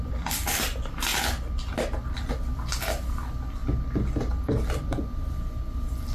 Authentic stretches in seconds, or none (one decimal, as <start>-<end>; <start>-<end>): 0.0-6.1